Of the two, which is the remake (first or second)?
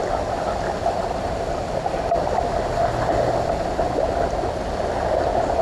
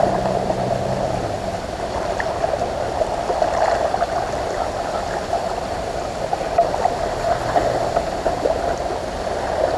second